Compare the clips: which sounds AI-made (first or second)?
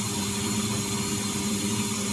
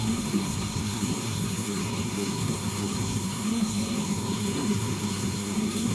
second